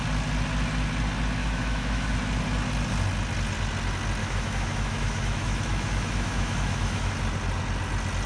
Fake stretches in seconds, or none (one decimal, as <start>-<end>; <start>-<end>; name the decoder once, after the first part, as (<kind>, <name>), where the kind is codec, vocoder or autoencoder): 1.4-2.0 (autoencoder, DAC-VAE); 4.2-7.1